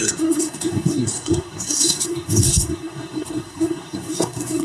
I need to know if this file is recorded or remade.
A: remade